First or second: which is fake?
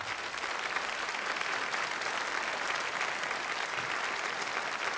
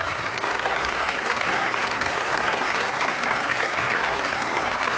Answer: second